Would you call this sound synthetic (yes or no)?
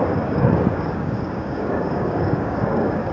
yes